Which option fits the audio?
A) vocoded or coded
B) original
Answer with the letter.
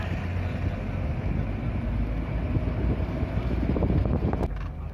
B